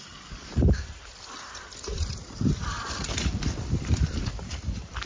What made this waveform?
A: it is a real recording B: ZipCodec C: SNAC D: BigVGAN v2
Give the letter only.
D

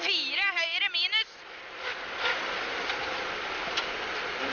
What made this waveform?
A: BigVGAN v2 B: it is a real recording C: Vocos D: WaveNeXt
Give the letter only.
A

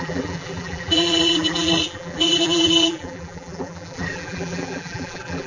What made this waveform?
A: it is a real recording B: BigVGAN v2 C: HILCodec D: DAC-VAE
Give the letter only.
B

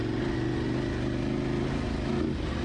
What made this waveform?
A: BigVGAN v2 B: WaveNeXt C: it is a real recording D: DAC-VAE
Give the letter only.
C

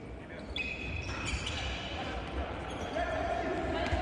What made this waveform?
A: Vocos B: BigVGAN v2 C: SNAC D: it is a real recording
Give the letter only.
B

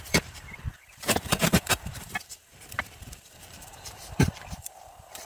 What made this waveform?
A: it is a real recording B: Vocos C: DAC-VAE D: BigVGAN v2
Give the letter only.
D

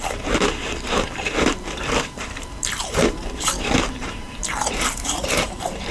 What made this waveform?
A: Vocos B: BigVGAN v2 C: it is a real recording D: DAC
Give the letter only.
B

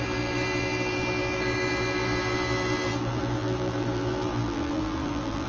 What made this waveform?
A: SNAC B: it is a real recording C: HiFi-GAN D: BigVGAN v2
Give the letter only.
D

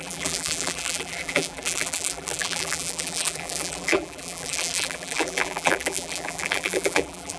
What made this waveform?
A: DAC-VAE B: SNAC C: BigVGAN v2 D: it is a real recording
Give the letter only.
C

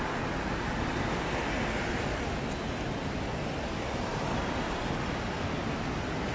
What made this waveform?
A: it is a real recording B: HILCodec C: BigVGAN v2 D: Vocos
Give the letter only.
A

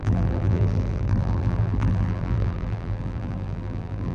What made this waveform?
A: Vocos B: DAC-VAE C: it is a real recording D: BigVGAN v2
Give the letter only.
D